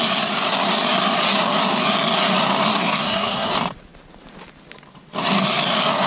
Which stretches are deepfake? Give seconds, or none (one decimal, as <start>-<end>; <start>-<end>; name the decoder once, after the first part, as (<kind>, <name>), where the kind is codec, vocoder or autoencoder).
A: 2.7-3.5 (codec, SNAC)